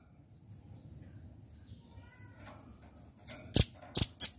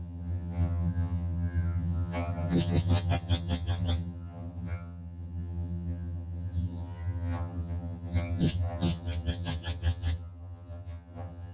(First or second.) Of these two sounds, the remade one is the second